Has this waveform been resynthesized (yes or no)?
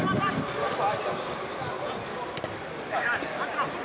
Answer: no